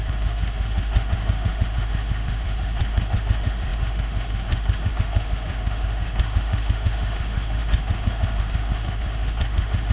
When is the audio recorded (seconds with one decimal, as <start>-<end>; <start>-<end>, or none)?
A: none